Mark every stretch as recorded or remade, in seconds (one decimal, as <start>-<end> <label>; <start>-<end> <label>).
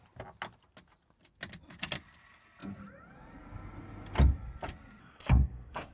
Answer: 0.0-5.0 recorded; 5.0-5.9 remade